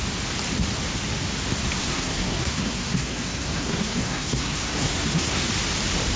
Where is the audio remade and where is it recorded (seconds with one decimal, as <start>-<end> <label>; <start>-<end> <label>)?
0.0-1.8 recorded; 1.8-5.5 remade; 5.5-6.2 recorded